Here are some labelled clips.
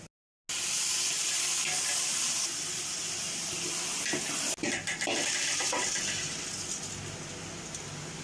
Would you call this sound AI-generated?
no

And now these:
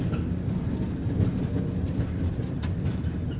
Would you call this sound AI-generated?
no